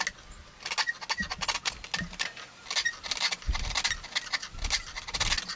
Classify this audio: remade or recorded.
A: recorded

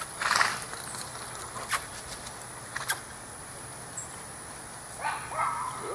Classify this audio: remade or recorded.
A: recorded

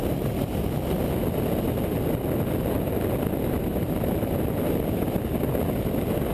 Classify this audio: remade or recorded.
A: recorded